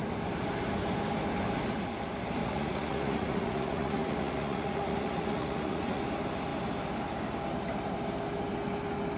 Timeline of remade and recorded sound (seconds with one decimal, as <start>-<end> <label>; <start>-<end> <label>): 0.0-2.4 recorded; 2.4-6.0 remade; 6.0-9.2 recorded